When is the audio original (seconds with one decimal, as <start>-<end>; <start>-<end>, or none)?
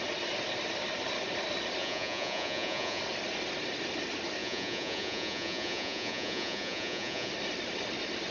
0.0-1.8; 3.0-4.4; 7.3-8.3